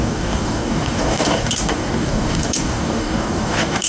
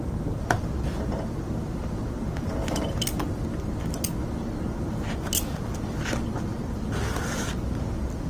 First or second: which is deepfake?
first